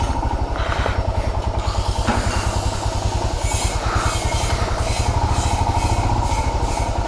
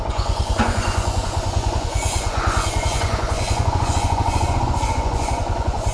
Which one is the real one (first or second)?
first